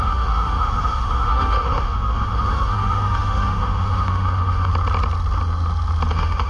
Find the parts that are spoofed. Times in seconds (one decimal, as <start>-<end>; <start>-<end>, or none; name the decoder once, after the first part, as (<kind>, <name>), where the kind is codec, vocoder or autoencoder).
0.0-4.7 (autoencoder, DAC-VAE); 6.1-6.5